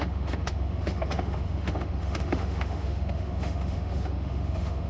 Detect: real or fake fake